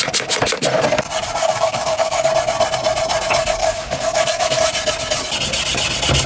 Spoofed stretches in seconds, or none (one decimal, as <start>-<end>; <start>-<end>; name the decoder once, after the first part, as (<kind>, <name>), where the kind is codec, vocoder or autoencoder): 1.4-2.3 (codec, DAC); 3.6-4.6